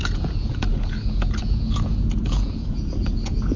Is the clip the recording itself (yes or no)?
no